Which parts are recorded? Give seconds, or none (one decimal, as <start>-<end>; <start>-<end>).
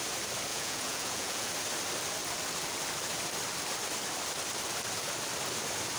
0.0-0.5; 1.5-6.0